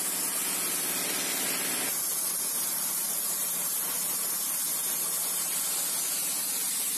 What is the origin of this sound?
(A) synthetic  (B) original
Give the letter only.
B